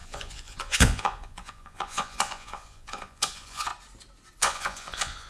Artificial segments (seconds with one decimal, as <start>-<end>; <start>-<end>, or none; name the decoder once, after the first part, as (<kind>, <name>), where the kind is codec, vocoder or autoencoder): 0.0-3.7 (vocoder, Vocos); 4.4-5.3